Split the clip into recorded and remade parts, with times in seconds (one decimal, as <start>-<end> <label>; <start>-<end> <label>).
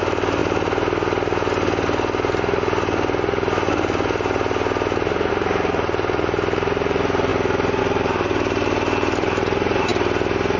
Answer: 0.0-0.4 remade; 0.4-5.3 recorded; 5.3-7.3 remade; 7.3-7.8 recorded; 7.8-9.9 remade; 9.9-10.6 recorded